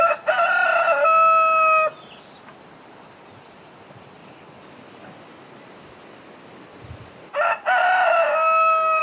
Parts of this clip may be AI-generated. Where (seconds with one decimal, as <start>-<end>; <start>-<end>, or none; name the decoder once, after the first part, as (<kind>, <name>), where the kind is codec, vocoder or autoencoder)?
0.0-0.7 (vocoder, BigVGAN v2); 2.2-4.2; 7.8-8.3